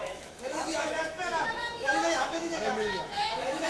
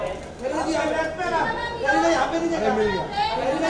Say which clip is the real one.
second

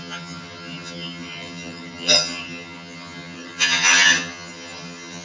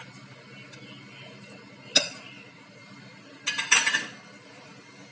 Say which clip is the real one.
second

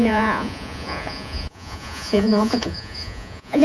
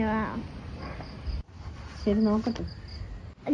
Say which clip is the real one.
second